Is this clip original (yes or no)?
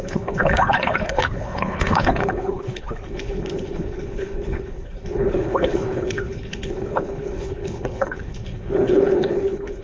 no